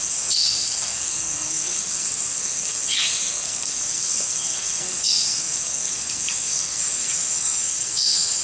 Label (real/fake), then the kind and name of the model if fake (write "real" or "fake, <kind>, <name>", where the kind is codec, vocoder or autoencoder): fake, codec, SNAC